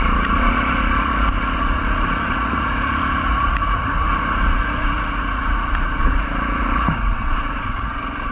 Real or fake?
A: fake